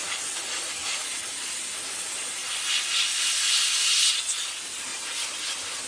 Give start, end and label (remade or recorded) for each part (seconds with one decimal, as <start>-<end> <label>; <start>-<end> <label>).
0.0-5.9 recorded